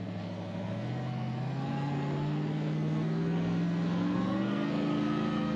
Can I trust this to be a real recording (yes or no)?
no